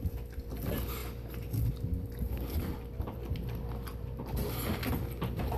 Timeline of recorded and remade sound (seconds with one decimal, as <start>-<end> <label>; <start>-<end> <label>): 0.0-5.6 recorded